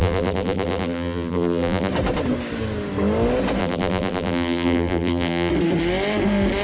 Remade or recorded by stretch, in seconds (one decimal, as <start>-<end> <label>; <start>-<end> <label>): 0.0-1.9 remade; 1.9-3.6 recorded; 3.6-5.5 remade; 5.5-6.6 recorded